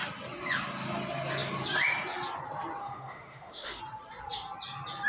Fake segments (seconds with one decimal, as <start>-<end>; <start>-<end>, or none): 2.8-3.8